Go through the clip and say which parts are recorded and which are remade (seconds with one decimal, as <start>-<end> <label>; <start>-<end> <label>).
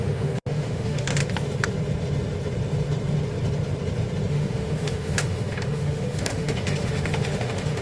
0.0-1.2 remade; 1.2-4.3 recorded; 4.3-7.8 remade